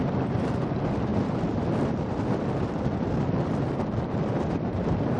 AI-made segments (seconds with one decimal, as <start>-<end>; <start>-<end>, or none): none